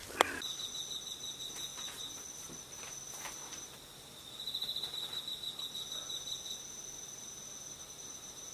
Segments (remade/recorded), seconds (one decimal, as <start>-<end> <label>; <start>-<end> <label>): 0.0-1.7 recorded; 1.7-3.1 remade; 3.1-8.5 recorded